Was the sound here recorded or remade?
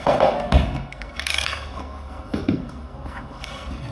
remade